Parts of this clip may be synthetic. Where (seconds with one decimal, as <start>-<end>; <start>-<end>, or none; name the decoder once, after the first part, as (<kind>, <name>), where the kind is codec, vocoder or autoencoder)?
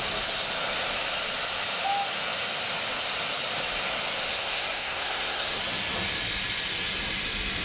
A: 4.3-5.6 (codec, SNAC)